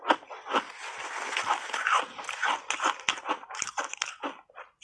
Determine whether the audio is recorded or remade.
recorded